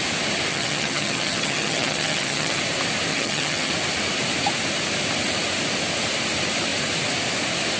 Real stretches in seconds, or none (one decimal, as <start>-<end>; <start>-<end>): 0.0-0.5; 2.6-3.1; 3.7-7.8